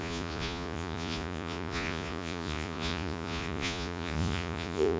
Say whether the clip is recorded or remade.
remade